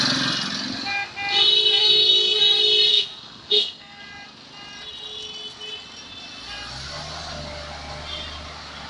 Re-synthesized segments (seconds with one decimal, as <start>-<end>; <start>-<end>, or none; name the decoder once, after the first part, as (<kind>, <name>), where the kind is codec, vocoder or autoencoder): 1.8-2.4 (codec, SNAC); 2.9-4.0